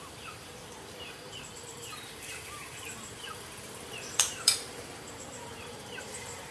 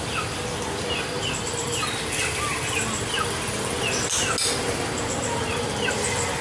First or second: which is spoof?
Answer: first